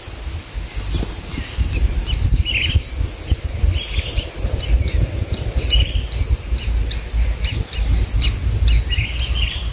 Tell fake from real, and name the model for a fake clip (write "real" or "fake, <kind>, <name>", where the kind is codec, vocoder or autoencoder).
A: real